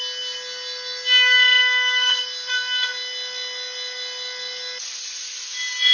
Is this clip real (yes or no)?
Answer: yes